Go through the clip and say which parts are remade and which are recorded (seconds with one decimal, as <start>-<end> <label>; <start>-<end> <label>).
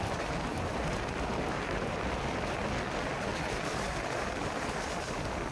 0.0-5.5 recorded